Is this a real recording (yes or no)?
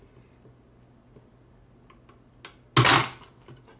yes